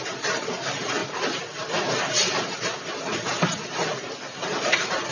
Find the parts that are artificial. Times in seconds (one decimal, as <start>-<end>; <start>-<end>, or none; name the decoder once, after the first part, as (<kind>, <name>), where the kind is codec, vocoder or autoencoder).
none